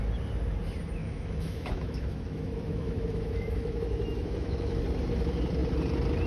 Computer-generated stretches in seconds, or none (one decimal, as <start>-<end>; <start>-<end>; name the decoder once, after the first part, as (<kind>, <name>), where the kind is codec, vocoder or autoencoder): 1.0-4.8 (autoencoder, DAC-VAE)